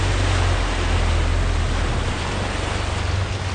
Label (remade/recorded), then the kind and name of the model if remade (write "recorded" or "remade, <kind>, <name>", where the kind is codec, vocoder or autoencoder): recorded